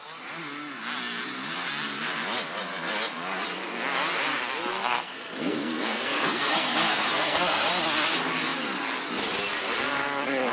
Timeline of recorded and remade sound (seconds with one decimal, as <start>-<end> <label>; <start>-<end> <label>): 0.0-4.7 recorded; 4.7-7.7 remade; 7.7-10.5 recorded